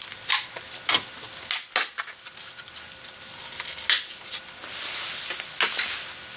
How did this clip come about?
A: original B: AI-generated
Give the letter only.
A